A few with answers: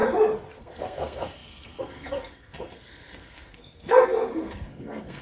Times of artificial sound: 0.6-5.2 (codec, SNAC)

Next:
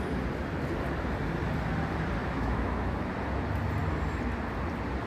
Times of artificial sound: 2.2-3.1 (autoencoder, DAC-VAE)

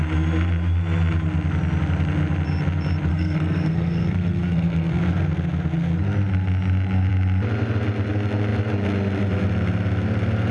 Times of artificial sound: 3.1-5.0 (codec, SNAC)

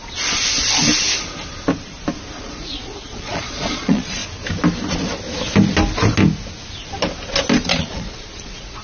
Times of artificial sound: 2.4-4.2 (vocoder, Vocos); 7.8-8.8

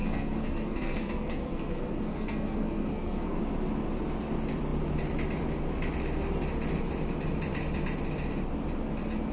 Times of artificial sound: 0.0-3.4 (codec, SNAC)

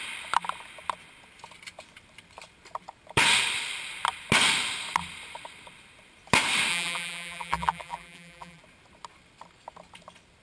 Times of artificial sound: 6.7-8.6 (vocoder, BigVGAN v2)

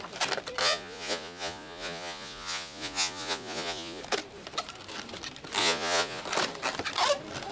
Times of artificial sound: 0.6-4.0 (vocoder, Vocos); 5.6-6.2

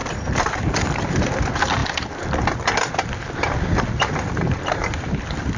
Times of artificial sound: none